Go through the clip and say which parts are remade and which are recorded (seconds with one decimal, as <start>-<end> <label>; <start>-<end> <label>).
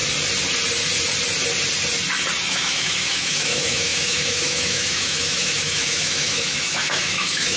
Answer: 0.0-2.5 recorded; 2.5-7.6 remade